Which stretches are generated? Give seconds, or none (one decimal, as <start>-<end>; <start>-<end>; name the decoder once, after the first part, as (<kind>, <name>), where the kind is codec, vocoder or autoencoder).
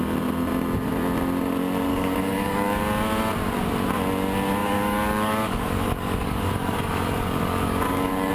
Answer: 1.9-2.8 (codec, DAC); 4.6-8.3